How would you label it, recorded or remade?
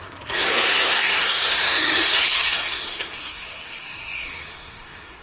remade